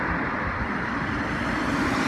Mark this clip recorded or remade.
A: remade